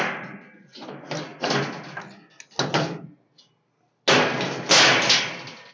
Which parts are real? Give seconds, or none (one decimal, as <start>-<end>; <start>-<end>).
0.0-5.7